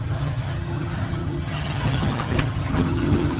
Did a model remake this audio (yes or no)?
yes